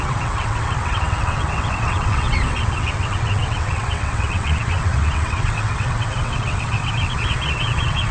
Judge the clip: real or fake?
fake